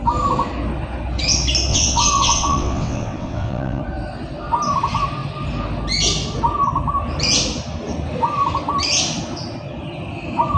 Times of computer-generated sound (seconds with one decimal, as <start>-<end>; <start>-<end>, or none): 1.7-3.8